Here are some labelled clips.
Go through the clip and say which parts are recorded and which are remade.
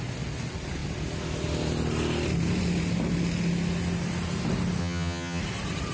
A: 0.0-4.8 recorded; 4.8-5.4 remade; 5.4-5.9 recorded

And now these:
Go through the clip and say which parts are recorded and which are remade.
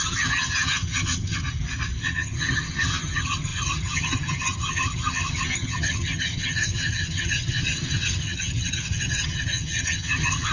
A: 0.0-1.4 remade; 1.4-2.0 recorded; 2.0-10.5 remade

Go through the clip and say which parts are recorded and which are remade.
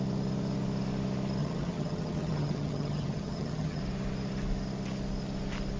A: 0.0-1.4 recorded; 1.4-3.8 remade; 3.8-5.8 recorded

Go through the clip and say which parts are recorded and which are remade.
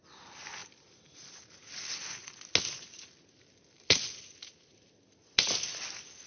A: 0.0-6.3 recorded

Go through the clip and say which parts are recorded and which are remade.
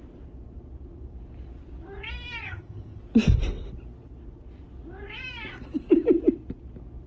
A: 0.0-2.4 recorded; 2.4-3.0 remade; 3.0-7.1 recorded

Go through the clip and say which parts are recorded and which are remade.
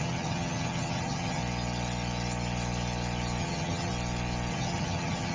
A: 0.0-1.4 remade; 1.4-3.4 recorded; 3.4-3.9 remade; 3.9-4.5 recorded; 4.5-5.3 remade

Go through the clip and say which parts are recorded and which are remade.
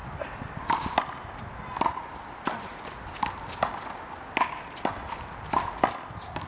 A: 0.0-6.5 recorded